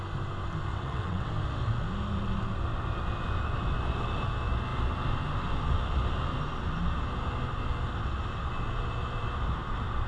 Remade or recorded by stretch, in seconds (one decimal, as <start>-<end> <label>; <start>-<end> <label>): 0.0-0.7 recorded; 0.7-1.3 remade; 1.3-10.1 recorded